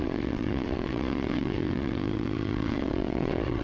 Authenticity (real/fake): fake